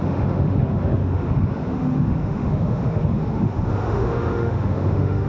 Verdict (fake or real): fake